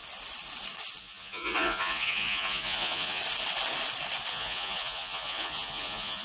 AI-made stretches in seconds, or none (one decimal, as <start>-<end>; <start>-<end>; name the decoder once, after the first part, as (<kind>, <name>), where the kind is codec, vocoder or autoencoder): 1.0-3.2 (vocoder, Vocos); 4.3-6.2

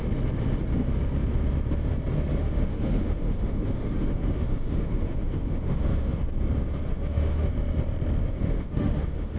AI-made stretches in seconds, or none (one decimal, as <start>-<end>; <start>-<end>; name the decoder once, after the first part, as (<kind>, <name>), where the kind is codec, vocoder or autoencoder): 2.4-6.2 (autoencoder, DAC-VAE); 6.9-7.5; 8.2-9.4

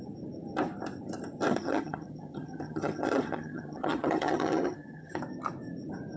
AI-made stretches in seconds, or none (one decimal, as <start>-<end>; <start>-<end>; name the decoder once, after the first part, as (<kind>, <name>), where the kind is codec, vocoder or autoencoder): 1.5-5.2 (vocoder, HiFi-GAN)

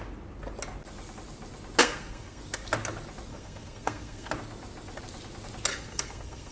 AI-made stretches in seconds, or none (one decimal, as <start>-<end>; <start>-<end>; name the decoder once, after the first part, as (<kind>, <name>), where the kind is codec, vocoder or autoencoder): 1.8-2.4 (codec, SNAC); 3.3-4.3; 5.7-6.5

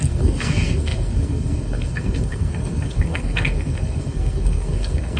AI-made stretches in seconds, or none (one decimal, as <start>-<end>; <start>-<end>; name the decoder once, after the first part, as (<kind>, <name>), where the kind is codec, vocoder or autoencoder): 0.0-5.2 (codec, SNAC)